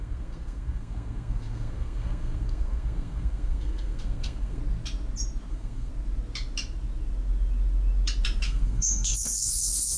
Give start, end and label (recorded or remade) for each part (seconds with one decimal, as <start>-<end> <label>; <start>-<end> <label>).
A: 0.0-4.6 remade; 4.6-5.5 recorded; 5.5-5.9 remade; 5.9-8.4 recorded; 8.4-10.0 remade